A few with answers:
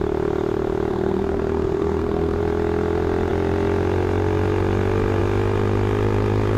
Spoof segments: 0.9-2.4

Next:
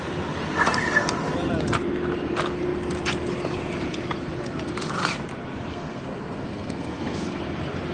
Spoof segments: 5.7-7.4

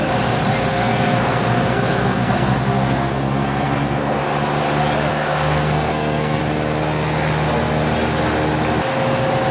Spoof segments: 0.7-4.2; 5.1-6.4

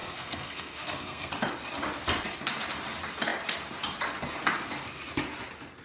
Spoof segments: 0.0-1.3